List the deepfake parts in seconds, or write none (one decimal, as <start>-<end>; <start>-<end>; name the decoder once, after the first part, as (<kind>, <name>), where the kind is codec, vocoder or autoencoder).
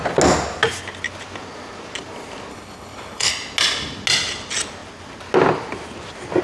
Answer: 2.5-3.3 (codec, HILCodec)